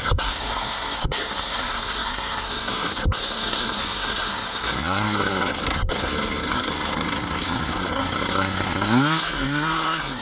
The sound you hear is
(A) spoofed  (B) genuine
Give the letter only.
A